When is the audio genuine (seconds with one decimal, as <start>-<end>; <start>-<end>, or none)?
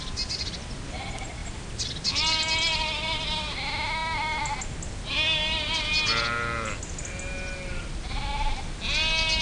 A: 0.0-9.4